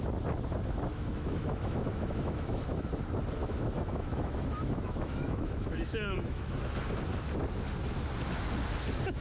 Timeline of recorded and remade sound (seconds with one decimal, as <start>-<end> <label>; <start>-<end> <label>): 0.0-0.9 recorded; 0.9-2.9 remade; 2.9-3.4 recorded; 3.4-6.5 remade; 6.5-9.2 recorded